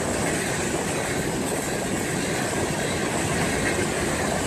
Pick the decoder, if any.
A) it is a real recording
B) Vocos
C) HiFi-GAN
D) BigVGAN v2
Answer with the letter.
A